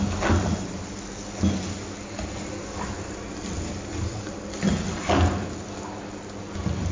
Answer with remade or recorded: recorded